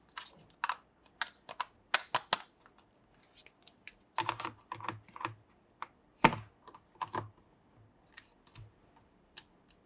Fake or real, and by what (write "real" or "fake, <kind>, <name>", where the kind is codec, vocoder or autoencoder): real